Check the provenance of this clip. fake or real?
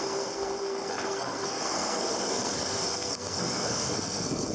fake